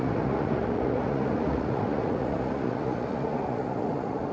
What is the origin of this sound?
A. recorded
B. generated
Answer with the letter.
B